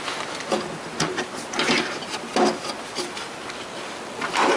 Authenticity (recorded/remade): recorded